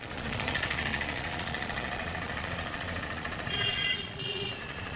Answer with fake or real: fake